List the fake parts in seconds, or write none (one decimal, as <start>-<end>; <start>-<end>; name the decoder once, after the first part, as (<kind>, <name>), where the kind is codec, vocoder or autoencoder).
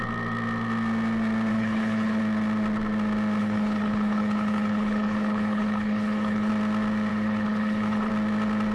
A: 1.5-2.2 (codec, HILCodec); 3.4-6.5; 7.1-8.1